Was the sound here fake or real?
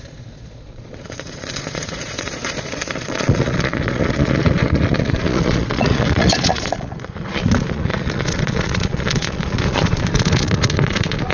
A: fake